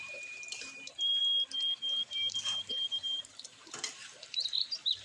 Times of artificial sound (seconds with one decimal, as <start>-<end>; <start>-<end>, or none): 0.0-1.2; 2.7-5.0